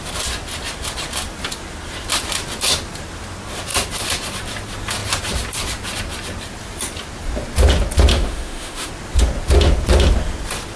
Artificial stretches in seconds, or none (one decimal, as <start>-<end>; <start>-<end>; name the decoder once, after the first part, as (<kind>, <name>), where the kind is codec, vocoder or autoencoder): 8.1-8.9 (autoencoder, DAC-VAE)